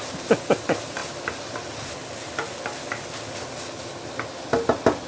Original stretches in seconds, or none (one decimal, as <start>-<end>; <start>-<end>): 0.0-5.1